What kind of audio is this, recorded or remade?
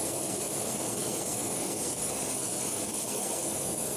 remade